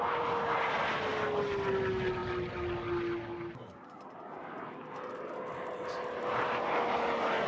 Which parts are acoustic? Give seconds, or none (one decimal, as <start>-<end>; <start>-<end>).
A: 0.0-7.5

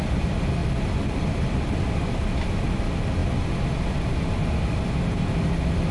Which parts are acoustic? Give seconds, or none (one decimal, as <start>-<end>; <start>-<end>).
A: 0.0-5.9

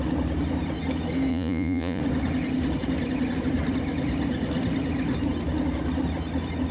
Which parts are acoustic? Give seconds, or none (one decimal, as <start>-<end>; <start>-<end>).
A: 0.0-1.3; 2.0-6.7

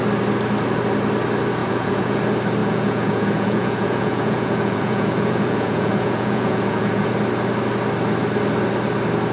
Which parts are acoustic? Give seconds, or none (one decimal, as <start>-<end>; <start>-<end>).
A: 0.0-1.6; 2.2-2.6; 7.1-9.3

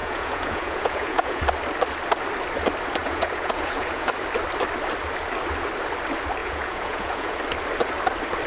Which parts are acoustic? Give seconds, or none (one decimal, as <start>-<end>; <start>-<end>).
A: 1.4-3.0; 4.1-6.4; 7.4-8.5

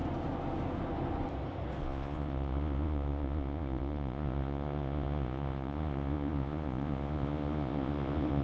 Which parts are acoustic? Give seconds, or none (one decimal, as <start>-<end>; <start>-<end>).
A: 0.0-1.8

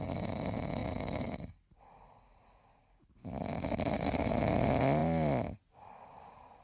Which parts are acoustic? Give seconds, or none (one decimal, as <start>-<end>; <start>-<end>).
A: 0.0-6.6

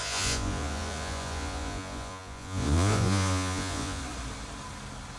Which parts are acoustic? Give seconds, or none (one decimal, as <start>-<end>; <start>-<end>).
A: 4.0-5.2